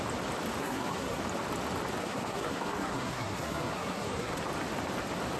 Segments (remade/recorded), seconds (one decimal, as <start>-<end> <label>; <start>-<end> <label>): 0.0-0.6 recorded; 0.6-1.2 remade; 1.2-2.0 recorded; 2.0-4.4 remade; 4.4-5.4 recorded